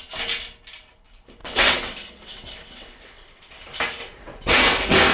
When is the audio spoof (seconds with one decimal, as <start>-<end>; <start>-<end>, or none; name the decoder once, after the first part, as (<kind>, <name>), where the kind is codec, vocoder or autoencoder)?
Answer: 1.4-3.5 (vocoder, WaveNeXt); 4.0-4.5